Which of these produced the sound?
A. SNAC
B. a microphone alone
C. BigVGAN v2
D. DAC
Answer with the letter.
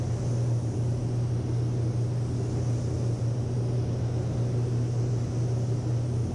B